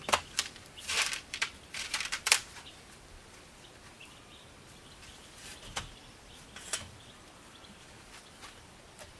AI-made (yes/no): yes